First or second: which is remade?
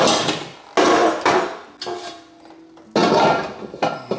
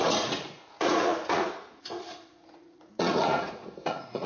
second